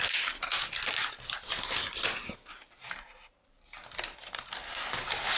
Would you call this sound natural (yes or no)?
yes